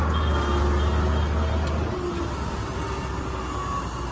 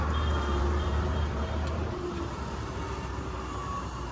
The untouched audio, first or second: first